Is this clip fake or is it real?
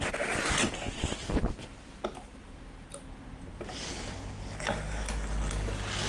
real